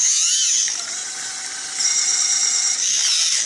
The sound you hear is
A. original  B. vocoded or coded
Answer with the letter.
A